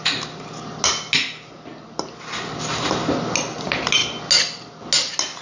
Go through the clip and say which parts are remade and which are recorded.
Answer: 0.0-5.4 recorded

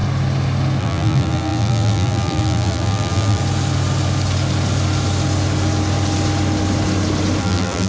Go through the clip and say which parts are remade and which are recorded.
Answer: 0.0-0.8 recorded; 0.8-3.4 remade; 3.4-7.4 recorded; 7.4-7.9 remade

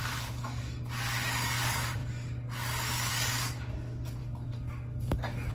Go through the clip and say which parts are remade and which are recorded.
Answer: 0.0-5.5 remade

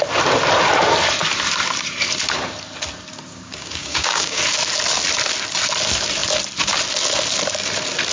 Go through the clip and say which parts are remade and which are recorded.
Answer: 0.0-3.3 recorded; 3.3-4.4 remade; 4.4-8.1 recorded

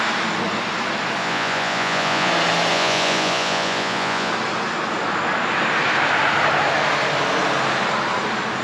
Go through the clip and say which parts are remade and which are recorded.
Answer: 0.0-1.2 recorded; 1.2-2.3 remade; 2.3-2.7 recorded; 2.7-4.3 remade; 4.3-8.6 recorded

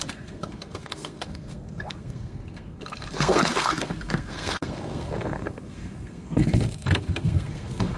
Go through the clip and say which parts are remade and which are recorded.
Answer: 0.0-8.0 remade

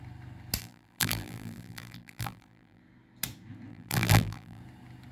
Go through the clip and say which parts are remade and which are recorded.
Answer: 0.0-0.6 recorded; 0.6-2.8 remade; 2.8-3.7 recorded; 3.7-4.6 remade; 4.6-5.1 recorded